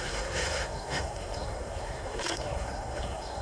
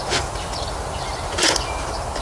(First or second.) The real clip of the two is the second